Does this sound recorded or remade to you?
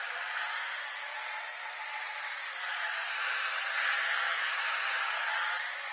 recorded